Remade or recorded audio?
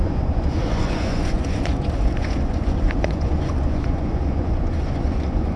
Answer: remade